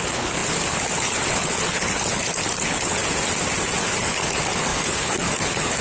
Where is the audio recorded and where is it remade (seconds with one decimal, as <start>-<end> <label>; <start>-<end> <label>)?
0.0-3.0 remade; 3.0-3.8 recorded; 3.8-5.8 remade